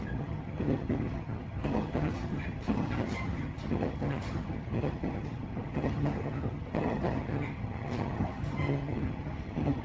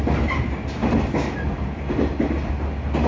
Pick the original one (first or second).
second